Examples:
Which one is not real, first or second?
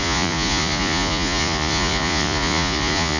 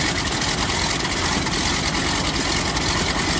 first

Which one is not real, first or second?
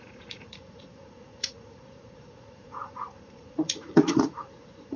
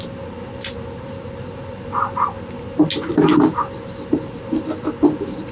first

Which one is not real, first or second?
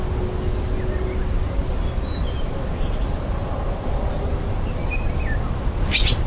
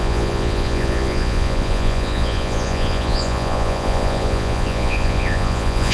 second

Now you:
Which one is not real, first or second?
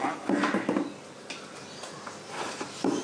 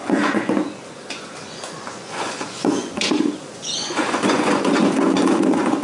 second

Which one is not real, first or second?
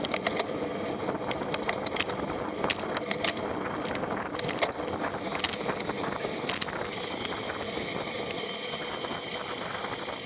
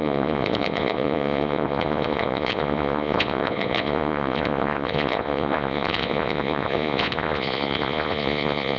second